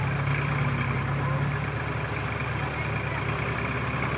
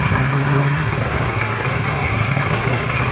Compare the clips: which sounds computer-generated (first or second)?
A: second